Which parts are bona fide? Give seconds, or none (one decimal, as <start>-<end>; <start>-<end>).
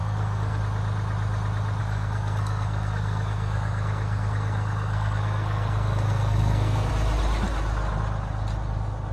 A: 0.6-1.8; 6.9-9.1